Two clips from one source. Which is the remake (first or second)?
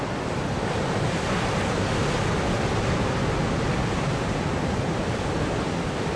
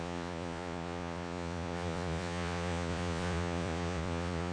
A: second